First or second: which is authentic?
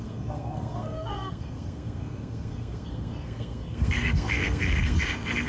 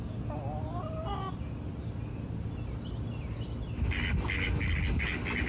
second